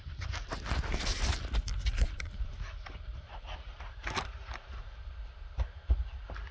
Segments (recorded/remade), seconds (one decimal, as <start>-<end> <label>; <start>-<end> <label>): 0.0-1.7 recorded; 1.7-5.6 remade; 5.6-6.5 recorded